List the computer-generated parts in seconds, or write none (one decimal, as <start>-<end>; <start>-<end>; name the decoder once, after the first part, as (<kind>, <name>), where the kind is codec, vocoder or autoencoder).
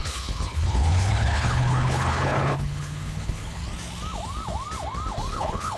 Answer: 0.0-3.6 (codec, HILCodec); 5.3-5.8